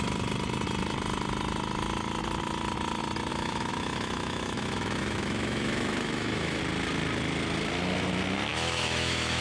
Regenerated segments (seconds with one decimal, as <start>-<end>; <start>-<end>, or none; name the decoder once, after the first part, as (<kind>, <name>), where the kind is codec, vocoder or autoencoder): 3.3-6.6 (autoencoder, DAC-VAE); 8.5-9.4

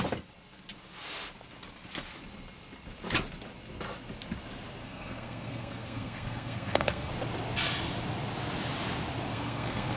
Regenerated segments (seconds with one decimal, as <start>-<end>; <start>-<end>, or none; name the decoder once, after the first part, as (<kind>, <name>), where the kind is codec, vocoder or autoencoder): 4.8-7.1 (codec, SNAC); 9.3-10.0

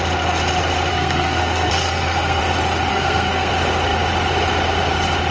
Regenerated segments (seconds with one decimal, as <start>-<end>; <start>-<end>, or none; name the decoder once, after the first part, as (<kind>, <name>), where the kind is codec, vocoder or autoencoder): 0.9-2.4 (codec, SNAC); 2.9-3.5

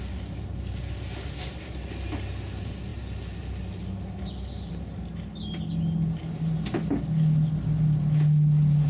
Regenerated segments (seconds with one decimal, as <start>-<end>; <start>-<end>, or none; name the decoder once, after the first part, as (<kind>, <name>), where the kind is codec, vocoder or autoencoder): none

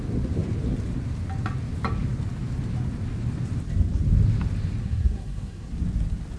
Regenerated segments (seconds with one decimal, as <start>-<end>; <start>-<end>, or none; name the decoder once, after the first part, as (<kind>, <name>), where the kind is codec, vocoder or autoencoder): 4.8-5.7 (codec, SNAC)

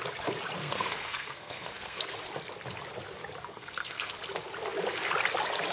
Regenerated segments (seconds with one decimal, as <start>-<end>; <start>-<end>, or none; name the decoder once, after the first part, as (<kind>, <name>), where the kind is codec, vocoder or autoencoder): 0.6-2.0 (codec, SNAC); 3.5-4.1

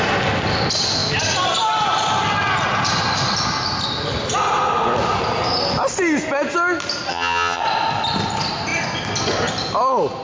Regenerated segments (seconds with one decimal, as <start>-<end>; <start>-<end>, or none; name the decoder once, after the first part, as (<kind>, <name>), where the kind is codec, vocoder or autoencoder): 7.1-7.6 (vocoder, HiFi-GAN)

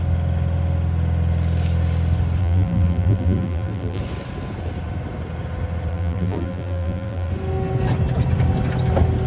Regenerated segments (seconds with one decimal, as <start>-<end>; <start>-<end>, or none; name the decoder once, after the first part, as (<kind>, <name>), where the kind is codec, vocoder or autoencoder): 2.4-4.0 (vocoder, BigVGAN v2); 5.9-7.3